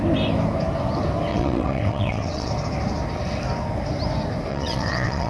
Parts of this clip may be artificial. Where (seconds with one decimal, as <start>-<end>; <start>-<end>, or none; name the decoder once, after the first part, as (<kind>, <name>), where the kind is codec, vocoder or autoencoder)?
1.3-2.5 (vocoder, WaveNeXt); 4.5-5.3